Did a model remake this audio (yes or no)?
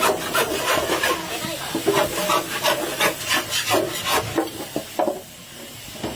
no